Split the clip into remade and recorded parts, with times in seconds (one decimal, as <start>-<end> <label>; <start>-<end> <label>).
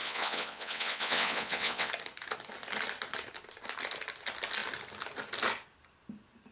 0.0-1.9 remade; 1.9-6.5 recorded